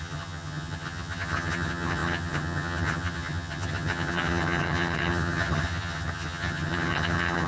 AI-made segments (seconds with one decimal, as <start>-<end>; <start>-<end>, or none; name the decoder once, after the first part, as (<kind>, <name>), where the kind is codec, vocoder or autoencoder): 0.0-7.5 (vocoder, HiFi-GAN)